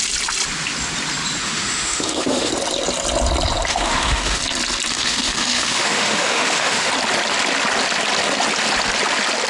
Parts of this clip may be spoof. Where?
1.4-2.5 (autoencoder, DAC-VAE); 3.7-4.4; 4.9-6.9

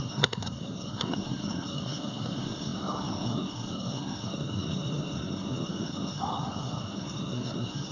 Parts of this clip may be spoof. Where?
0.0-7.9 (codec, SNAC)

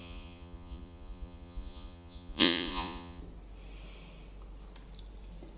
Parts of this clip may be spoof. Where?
0.0-3.2 (vocoder, Vocos)